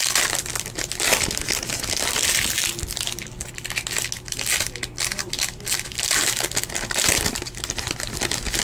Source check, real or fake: real